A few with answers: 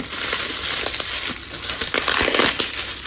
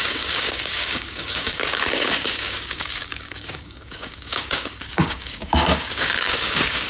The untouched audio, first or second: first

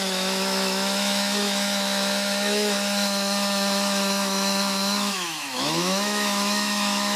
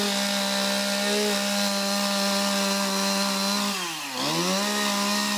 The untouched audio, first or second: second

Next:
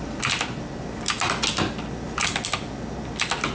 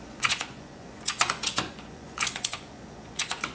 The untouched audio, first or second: first